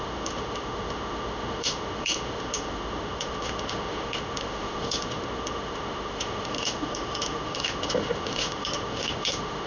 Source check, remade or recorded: remade